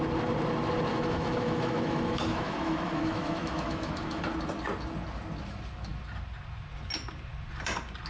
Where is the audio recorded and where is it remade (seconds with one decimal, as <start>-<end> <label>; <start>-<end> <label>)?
0.0-0.9 recorded; 0.9-4.2 remade; 4.2-8.1 recorded